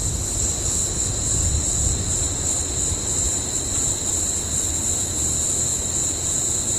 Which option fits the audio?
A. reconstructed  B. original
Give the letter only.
B